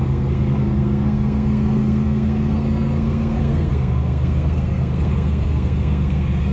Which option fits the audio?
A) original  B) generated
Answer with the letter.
B